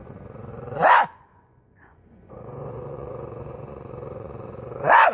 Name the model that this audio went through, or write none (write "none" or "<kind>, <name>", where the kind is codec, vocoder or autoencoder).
vocoder, Vocos